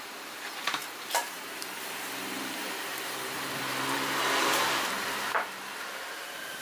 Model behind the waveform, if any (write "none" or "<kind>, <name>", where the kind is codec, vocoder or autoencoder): vocoder, BigVGAN v2